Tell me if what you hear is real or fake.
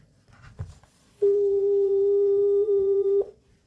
fake